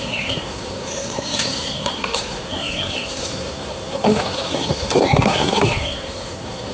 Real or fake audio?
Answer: fake